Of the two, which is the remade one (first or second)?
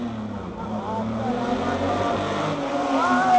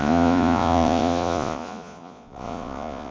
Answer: second